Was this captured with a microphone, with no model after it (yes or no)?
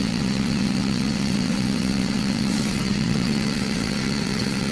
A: no